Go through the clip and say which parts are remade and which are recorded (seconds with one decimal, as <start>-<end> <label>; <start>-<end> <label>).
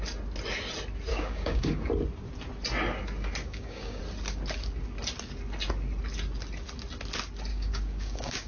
0.0-1.1 recorded; 1.1-1.9 remade; 1.9-3.4 recorded; 3.4-4.0 remade; 4.0-7.5 recorded; 7.5-8.5 remade